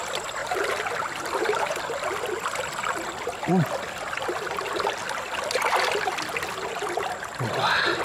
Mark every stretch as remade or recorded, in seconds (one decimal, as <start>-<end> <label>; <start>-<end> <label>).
0.0-0.4 recorded; 0.4-1.8 remade; 1.8-8.0 recorded